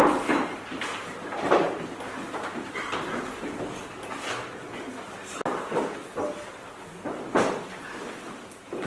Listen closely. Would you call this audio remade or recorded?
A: recorded